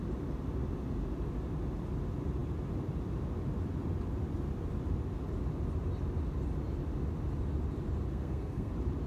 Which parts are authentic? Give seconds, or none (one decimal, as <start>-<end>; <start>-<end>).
0.0-8.1; 8.7-9.1